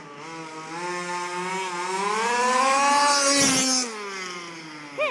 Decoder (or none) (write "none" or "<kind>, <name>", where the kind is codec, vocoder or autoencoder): none